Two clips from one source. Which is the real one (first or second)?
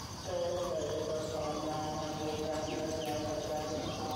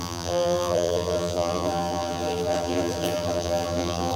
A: first